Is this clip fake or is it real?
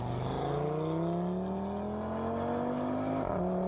real